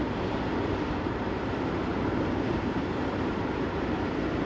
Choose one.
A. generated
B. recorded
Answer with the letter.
A